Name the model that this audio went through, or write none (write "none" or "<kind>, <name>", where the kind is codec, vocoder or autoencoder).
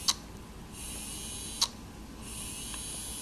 none